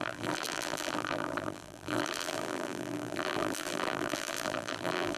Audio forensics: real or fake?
fake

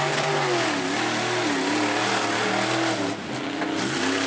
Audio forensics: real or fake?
real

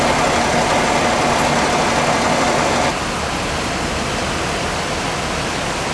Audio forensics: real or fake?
real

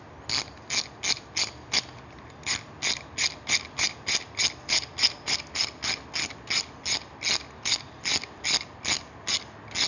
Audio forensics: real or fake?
real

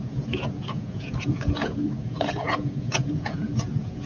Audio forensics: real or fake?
fake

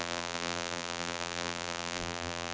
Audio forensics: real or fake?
fake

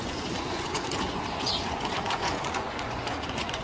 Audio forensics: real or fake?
fake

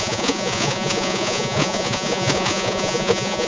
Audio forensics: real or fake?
fake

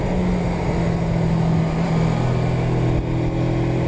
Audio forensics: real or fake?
real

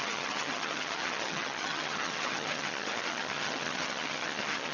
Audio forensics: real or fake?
fake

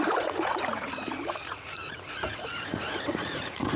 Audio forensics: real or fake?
fake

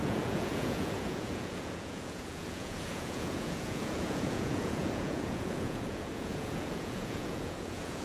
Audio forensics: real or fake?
fake